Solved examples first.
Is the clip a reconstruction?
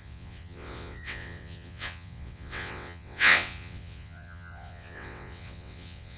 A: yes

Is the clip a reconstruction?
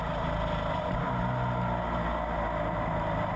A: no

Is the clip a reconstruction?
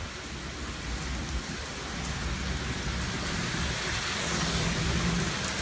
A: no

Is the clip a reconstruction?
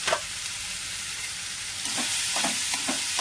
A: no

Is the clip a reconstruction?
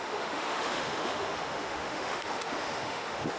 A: yes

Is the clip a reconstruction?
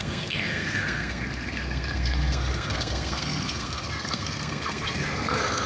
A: yes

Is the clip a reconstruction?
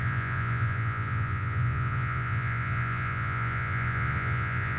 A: yes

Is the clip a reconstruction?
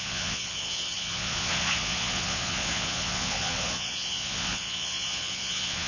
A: yes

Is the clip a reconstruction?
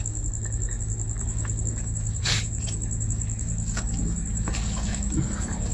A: yes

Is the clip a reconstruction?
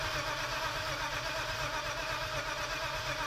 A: yes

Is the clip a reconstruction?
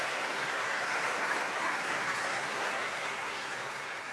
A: yes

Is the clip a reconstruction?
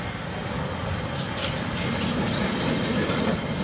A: no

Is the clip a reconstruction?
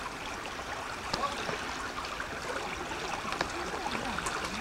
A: no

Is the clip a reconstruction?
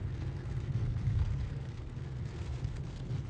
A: yes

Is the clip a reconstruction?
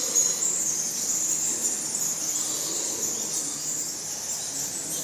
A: no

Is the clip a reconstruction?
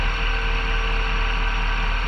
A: no